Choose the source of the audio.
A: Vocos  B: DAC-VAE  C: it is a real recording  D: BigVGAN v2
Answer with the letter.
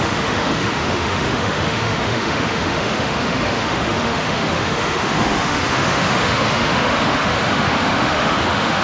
B